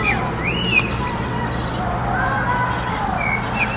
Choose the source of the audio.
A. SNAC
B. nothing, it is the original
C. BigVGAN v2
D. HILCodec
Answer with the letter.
B